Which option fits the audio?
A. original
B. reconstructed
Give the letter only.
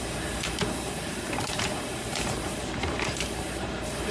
B